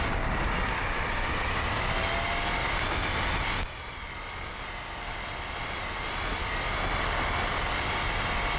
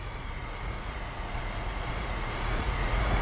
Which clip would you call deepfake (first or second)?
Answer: second